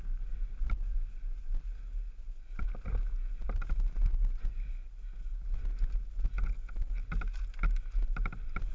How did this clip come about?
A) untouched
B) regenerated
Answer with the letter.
A